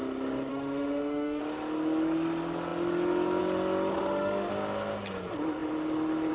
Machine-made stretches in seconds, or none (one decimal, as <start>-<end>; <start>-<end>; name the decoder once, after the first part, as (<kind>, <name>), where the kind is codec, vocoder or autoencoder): 0.5-1.4 (autoencoder, DAC-VAE); 3.9-4.5